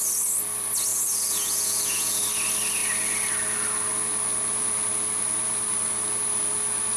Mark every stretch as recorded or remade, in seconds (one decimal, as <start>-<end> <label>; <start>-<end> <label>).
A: 0.0-0.9 recorded; 0.9-2.2 remade; 2.2-7.0 recorded

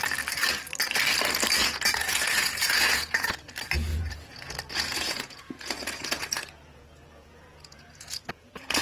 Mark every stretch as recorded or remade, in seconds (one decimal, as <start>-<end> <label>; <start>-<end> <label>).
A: 0.0-1.6 recorded; 1.6-3.5 remade; 3.5-3.9 recorded; 3.9-8.8 remade

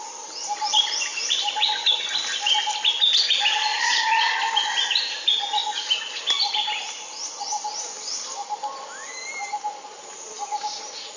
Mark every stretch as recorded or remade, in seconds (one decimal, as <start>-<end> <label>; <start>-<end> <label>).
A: 0.0-3.7 recorded; 3.7-4.4 remade; 4.4-11.2 recorded

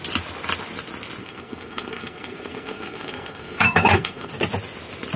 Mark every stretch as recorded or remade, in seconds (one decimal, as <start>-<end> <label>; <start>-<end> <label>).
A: 0.0-1.2 recorded; 1.2-4.3 remade; 4.3-5.2 recorded

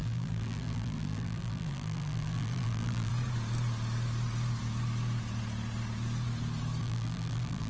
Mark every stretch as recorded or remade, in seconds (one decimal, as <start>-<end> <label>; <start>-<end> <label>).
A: 0.0-3.1 remade; 3.1-6.8 recorded; 6.8-7.7 remade

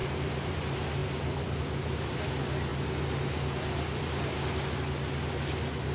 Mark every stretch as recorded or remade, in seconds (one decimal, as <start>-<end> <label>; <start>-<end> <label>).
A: 0.0-0.6 remade; 0.6-1.0 recorded; 1.0-2.3 remade; 2.3-5.9 recorded

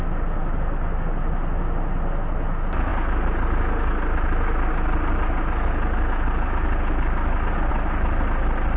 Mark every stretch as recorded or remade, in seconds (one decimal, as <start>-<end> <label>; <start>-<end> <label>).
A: 0.0-8.8 recorded

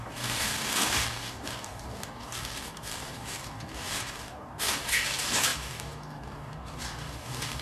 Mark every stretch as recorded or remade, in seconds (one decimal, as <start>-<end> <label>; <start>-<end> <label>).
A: 0.0-7.6 remade